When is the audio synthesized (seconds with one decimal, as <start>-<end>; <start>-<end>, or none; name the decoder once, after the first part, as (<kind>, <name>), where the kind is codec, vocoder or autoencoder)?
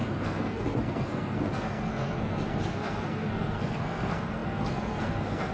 0.0-5.5 (codec, SNAC)